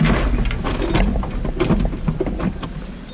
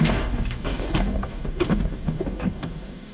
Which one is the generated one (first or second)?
second